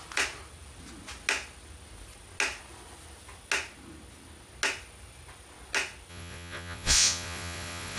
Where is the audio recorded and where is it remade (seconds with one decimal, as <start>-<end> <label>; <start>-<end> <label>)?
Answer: 0.0-6.1 recorded; 6.1-8.0 remade